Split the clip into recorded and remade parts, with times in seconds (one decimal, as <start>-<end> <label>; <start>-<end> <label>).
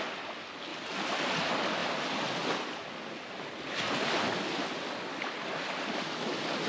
0.0-6.7 recorded